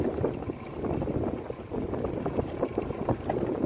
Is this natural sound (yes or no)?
yes